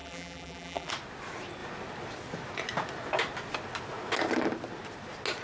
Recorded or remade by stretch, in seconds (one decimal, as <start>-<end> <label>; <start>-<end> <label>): 0.0-0.9 remade; 0.9-5.4 recorded